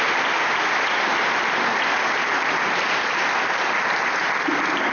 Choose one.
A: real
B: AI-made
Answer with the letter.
A